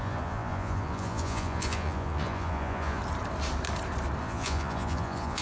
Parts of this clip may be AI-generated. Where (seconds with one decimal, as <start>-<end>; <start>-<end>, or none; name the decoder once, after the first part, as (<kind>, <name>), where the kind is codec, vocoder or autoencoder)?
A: 0.0-3.0 (vocoder, Vocos); 4.2-5.4